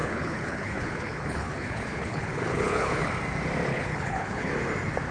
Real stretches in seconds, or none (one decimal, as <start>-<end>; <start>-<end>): 3.1-3.7; 4.5-5.1